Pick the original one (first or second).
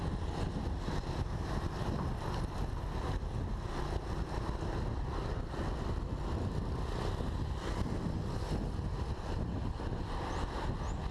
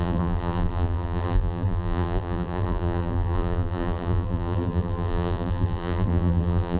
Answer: first